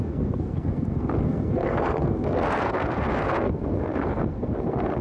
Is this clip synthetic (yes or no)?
yes